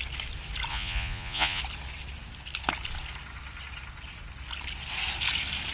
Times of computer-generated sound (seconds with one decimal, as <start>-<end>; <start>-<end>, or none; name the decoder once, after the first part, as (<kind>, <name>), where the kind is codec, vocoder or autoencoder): 0.7-1.6 (vocoder, Vocos)